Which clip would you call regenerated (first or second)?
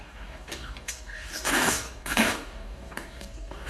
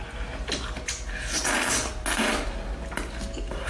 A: first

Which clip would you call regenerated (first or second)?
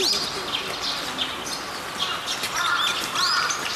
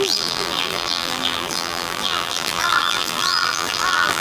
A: second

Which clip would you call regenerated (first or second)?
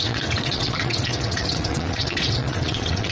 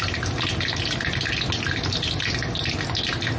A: first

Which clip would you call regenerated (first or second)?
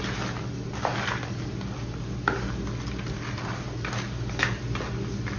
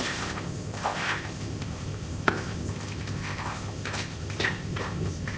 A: second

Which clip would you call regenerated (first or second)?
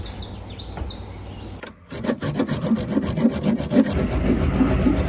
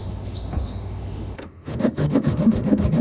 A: second